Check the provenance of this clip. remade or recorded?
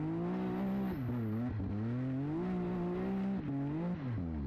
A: recorded